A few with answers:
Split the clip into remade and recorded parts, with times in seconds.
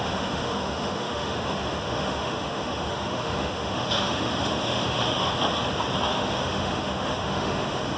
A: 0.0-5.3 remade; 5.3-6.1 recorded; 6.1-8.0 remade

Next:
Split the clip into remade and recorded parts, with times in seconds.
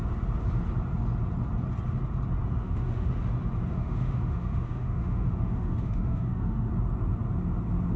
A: 0.0-2.6 recorded; 2.6-3.1 remade; 3.1-3.7 recorded; 3.7-6.7 remade; 6.7-8.0 recorded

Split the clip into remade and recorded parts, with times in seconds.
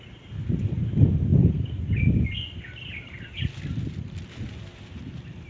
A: 0.0-5.5 recorded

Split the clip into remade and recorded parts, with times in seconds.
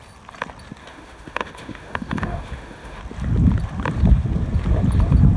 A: 0.0-0.8 recorded; 0.8-3.0 remade; 3.0-5.4 recorded